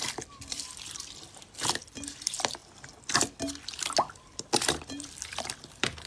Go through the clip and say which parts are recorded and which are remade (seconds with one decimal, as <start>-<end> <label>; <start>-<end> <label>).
0.0-2.6 remade; 2.6-4.2 recorded; 4.2-6.1 remade